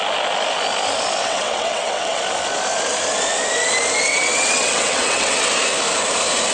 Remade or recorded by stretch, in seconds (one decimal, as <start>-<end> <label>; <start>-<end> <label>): 0.0-1.2 recorded; 1.2-2.2 remade; 2.2-4.1 recorded; 4.1-5.5 remade; 5.5-6.5 recorded